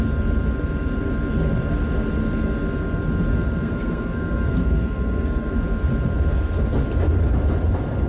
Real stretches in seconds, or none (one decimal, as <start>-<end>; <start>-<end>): 0.0-3.3; 5.5-8.1